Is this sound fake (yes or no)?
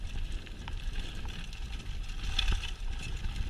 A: no